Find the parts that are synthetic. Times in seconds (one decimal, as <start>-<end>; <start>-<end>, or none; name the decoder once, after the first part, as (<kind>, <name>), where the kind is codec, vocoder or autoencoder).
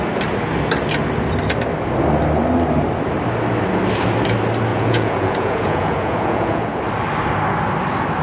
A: 4.7-6.8 (vocoder, Vocos)